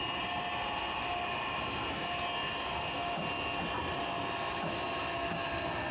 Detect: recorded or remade recorded